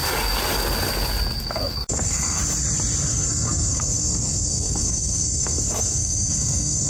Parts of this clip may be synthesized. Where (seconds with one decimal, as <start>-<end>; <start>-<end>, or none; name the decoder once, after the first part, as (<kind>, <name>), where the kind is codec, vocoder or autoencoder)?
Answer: 1.4-2.4 (codec, SNAC); 3.1-6.9

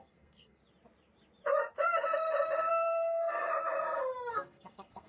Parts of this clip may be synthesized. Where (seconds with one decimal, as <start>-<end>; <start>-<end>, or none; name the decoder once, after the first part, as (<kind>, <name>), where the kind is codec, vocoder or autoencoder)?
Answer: 0.0-0.6 (codec, SNAC); 2.7-3.5; 4.3-5.1

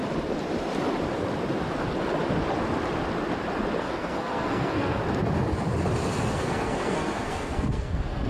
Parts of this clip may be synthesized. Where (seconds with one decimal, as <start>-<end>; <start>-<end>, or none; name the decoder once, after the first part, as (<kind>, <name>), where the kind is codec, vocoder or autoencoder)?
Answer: 3.8-5.0 (codec, SNAC); 6.3-8.3

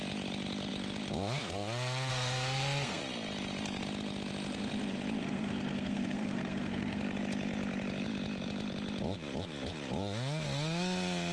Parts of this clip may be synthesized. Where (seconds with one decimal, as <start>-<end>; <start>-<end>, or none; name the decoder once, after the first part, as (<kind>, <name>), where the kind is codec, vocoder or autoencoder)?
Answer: 2.1-3.0 (codec, SNAC); 5.2-7.0

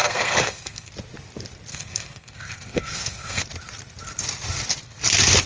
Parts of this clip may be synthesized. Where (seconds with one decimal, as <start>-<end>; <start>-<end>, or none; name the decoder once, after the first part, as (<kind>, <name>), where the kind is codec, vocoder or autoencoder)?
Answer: 0.0-0.9 (codec, SNAC); 1.7-3.4